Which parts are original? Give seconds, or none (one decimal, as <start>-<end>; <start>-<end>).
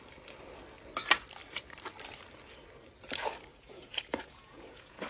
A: 0.0-3.5